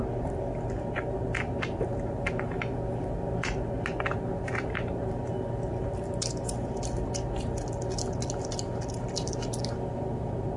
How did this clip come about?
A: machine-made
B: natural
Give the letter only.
B